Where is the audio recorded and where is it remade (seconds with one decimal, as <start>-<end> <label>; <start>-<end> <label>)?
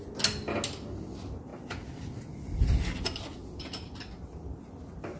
0.0-5.2 recorded